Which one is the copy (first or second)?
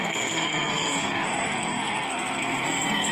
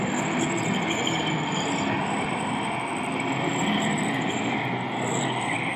first